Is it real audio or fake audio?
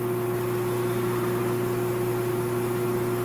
real